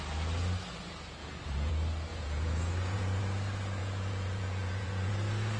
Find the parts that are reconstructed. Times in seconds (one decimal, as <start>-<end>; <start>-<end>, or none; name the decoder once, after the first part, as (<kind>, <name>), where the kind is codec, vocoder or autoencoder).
1.2-1.7 (vocoder, Vocos); 2.1-3.2; 3.8-5.1

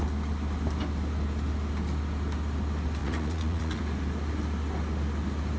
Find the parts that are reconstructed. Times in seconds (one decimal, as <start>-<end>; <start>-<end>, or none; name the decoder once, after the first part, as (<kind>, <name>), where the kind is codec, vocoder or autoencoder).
3.0-3.8 (vocoder, Vocos)

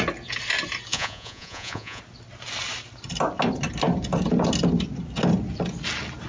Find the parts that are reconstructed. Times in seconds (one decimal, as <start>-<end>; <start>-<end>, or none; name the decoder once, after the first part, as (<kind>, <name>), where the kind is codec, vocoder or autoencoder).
0.9-2.0 (vocoder, Vocos)

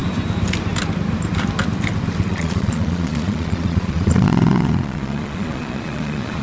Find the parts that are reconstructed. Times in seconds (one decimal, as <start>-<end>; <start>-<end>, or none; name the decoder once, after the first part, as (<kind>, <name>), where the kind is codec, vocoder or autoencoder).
2.3-6.4 (vocoder, Vocos)

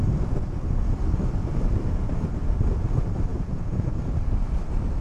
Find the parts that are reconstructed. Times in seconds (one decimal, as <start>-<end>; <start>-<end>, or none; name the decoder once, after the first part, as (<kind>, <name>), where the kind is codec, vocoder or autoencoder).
3.3-4.0 (vocoder, Vocos)